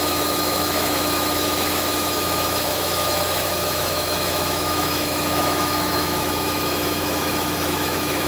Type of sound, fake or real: fake